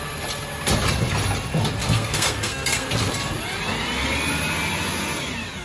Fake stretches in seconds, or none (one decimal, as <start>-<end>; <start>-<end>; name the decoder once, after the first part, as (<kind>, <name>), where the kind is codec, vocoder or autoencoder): 1.8-3.1 (codec, SNAC)